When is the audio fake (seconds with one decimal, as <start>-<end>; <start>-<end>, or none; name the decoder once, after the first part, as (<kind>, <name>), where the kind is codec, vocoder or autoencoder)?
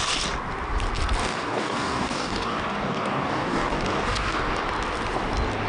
1.2-4.6 (codec, DAC)